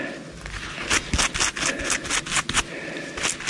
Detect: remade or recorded recorded